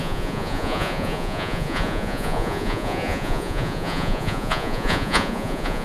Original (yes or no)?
no